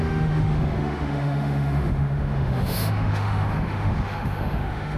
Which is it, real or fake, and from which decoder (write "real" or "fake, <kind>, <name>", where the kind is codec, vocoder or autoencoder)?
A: fake, autoencoder, DAC-VAE